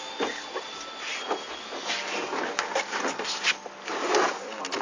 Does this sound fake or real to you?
real